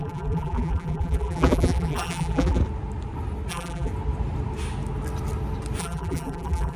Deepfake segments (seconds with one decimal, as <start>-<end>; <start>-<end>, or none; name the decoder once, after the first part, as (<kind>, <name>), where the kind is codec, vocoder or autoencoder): 0.0-2.6 (vocoder, BigVGAN v2); 3.5-3.9; 5.8-6.8